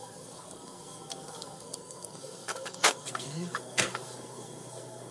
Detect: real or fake fake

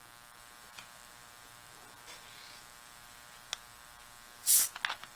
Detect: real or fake real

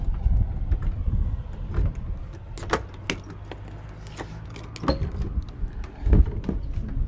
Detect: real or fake real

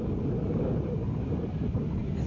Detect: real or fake real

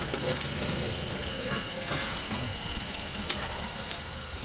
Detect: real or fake fake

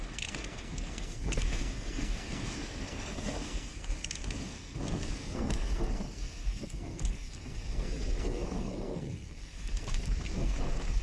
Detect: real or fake fake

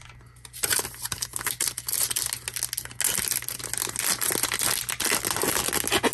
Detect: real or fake real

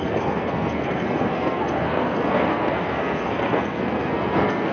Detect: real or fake fake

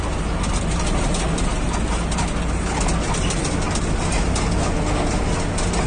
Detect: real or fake real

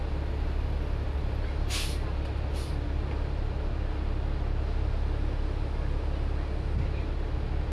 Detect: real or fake real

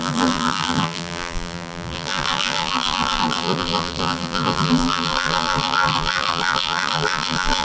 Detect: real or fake fake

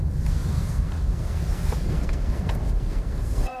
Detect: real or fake fake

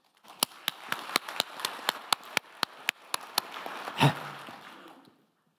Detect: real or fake real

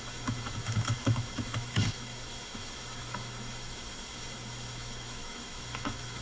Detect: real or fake fake